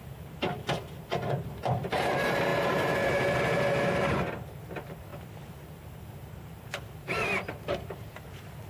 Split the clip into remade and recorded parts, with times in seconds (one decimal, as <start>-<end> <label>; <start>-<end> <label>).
0.0-8.7 remade

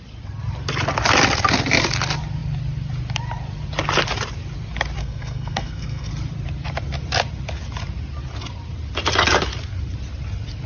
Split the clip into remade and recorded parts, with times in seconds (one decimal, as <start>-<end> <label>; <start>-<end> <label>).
0.0-5.0 recorded; 5.0-6.1 remade; 6.1-10.7 recorded